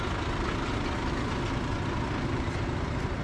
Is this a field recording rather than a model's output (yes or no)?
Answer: yes